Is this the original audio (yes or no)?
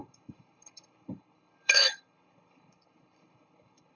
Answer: no